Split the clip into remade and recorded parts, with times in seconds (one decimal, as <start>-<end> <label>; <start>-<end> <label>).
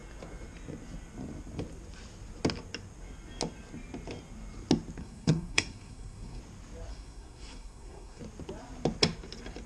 0.0-5.0 recorded; 5.0-6.4 remade; 6.4-6.9 recorded; 6.9-8.2 remade; 8.2-9.7 recorded